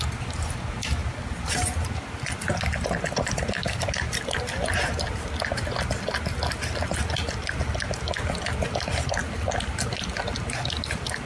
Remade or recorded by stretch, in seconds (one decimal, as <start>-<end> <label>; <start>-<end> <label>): 0.0-11.3 recorded